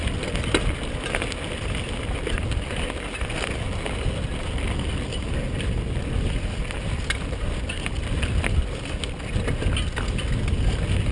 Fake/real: real